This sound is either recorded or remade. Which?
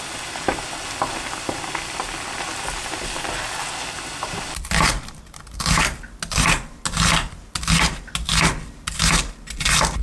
recorded